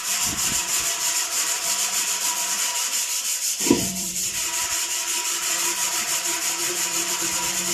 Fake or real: fake